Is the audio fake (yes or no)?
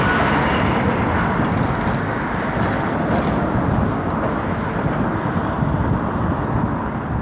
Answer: no